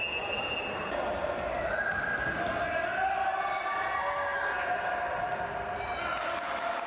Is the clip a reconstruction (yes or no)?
no